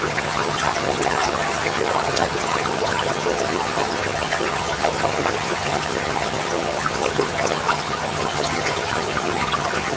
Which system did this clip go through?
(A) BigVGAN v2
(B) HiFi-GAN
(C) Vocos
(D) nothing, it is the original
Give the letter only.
B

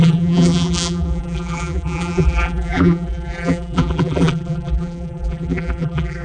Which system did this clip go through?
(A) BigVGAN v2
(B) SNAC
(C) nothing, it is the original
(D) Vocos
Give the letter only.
A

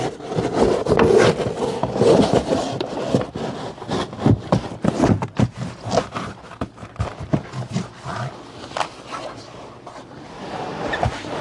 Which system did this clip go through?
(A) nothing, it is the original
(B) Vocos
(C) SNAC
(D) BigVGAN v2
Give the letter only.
A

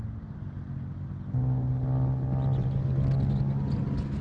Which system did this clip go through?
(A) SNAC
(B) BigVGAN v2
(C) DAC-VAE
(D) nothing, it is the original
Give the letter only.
D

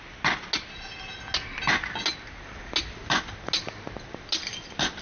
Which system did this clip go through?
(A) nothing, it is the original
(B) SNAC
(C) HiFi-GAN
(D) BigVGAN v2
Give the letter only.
A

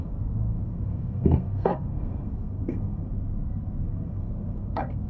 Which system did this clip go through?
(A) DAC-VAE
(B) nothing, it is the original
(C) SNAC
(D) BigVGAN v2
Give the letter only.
C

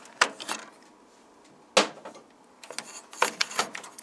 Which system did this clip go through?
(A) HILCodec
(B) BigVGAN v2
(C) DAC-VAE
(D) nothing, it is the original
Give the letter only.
D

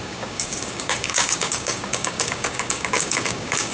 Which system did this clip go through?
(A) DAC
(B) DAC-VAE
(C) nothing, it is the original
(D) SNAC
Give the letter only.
A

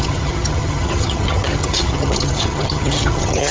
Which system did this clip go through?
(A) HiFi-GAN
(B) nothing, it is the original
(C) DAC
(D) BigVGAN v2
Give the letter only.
A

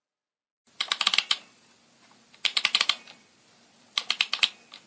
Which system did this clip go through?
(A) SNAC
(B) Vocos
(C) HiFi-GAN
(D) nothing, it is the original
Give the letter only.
D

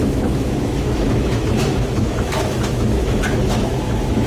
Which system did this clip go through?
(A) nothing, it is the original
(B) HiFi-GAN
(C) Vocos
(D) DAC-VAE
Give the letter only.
D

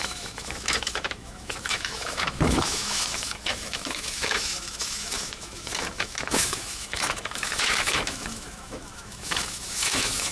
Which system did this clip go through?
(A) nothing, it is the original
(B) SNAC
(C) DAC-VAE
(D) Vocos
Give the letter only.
C